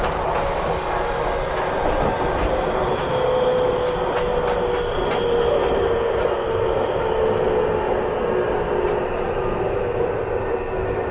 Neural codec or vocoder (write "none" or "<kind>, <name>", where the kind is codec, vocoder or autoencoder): none